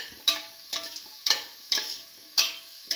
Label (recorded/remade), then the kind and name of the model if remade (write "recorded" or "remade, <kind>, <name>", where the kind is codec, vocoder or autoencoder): remade, codec, DAC